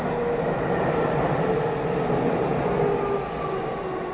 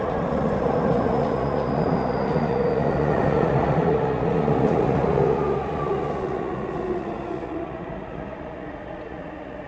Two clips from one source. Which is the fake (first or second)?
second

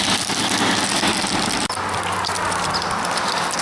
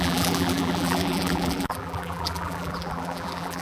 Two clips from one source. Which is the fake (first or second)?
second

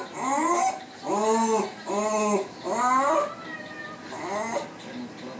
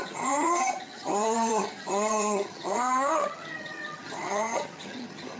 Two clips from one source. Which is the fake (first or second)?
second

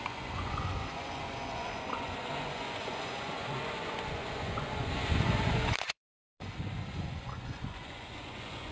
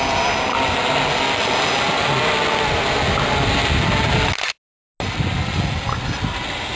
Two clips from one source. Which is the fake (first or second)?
first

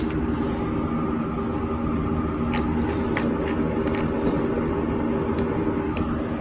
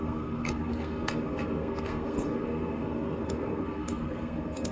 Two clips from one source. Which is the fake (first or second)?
second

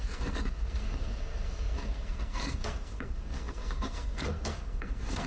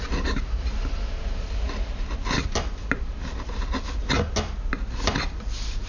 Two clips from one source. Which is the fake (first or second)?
first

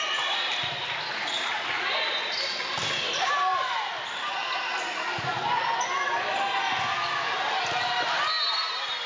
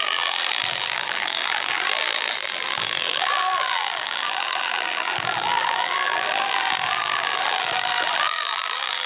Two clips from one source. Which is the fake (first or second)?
second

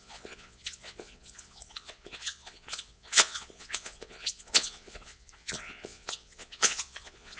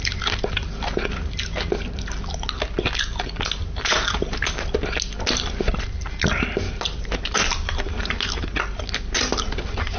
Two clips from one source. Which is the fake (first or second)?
first